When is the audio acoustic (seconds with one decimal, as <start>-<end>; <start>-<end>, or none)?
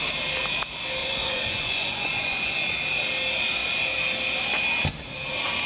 0.0-1.0; 2.7-5.7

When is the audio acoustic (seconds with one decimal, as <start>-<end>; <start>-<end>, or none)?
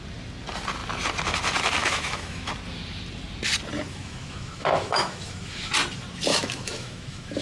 0.0-1.8; 2.5-3.9; 5.7-6.3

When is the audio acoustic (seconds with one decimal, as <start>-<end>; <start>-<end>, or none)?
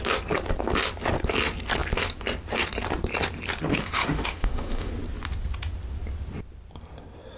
0.0-3.7; 4.9-7.4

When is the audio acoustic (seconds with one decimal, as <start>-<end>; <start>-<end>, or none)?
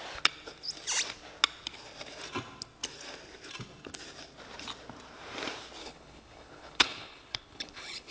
0.0-5.8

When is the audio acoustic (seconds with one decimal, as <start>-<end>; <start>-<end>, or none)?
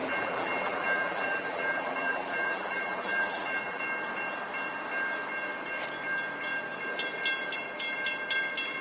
3.8-8.8